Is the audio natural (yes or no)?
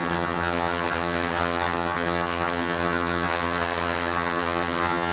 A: no